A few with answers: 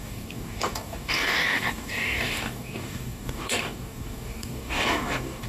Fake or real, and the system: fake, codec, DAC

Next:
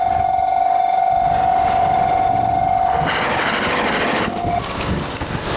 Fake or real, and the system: real